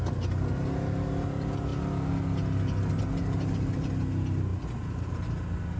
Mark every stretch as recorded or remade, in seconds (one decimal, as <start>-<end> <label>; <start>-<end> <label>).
0.0-5.8 recorded